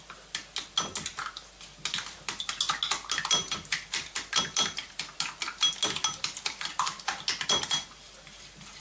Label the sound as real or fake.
real